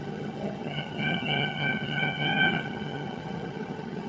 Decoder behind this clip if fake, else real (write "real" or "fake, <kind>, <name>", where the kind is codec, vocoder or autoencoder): fake, vocoder, HiFi-GAN